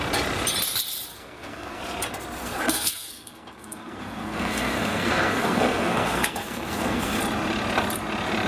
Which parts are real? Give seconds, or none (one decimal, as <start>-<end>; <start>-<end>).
0.0-1.1; 1.8-2.4; 7.2-8.5